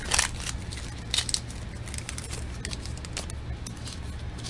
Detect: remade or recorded recorded